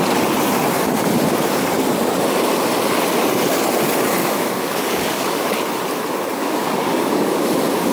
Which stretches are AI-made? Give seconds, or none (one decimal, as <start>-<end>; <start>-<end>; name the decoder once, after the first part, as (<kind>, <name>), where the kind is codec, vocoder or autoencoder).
4.2-5.7 (codec, DAC); 6.4-7.9